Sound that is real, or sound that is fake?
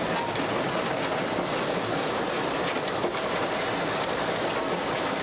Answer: real